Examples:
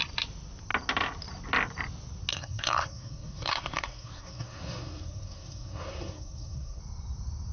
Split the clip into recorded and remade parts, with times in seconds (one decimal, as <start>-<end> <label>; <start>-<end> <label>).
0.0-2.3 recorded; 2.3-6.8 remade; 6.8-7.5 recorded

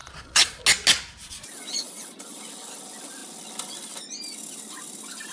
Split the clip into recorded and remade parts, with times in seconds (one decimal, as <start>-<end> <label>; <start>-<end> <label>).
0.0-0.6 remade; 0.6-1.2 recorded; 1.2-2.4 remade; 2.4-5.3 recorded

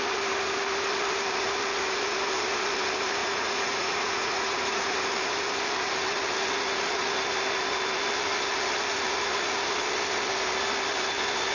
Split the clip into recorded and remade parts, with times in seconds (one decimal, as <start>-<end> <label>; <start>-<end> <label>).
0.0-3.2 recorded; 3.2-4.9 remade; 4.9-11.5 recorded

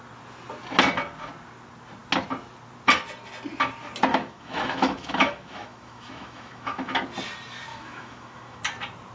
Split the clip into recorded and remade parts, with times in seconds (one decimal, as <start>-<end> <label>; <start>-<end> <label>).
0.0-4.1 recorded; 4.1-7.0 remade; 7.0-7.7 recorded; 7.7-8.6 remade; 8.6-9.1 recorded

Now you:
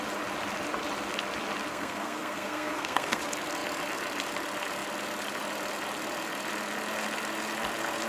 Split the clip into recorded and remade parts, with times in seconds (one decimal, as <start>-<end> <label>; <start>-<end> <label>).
0.0-1.7 recorded; 1.7-3.2 remade; 3.2-8.1 recorded